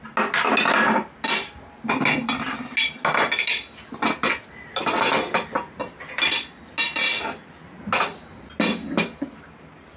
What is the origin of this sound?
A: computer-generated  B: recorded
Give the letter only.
B